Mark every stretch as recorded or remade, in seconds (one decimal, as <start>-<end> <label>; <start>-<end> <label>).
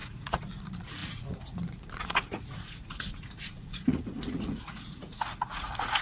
0.0-6.0 remade